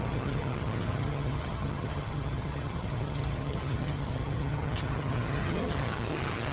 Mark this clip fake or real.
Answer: fake